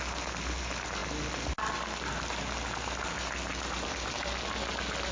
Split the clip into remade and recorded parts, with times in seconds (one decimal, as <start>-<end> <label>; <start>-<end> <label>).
0.0-5.1 recorded